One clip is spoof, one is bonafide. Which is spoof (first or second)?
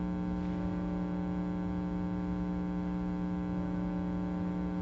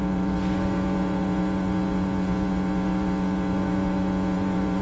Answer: second